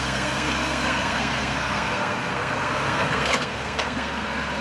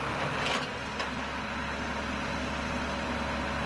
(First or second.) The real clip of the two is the second